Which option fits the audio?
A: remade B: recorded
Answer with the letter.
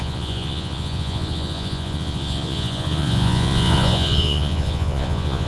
A